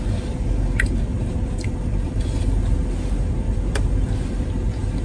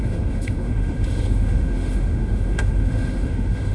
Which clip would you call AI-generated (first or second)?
second